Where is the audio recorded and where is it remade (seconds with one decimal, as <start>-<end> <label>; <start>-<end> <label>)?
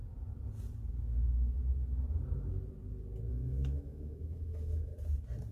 0.0-3.3 recorded; 3.3-4.9 remade; 4.9-5.5 recorded